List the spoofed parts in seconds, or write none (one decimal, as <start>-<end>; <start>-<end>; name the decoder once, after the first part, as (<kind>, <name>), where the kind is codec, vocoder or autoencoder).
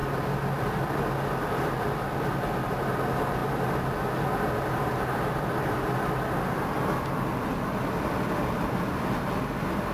none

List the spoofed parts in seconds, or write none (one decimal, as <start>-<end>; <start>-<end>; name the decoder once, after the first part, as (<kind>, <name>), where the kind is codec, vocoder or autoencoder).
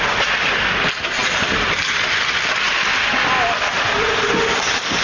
none